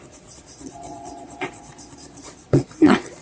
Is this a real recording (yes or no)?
no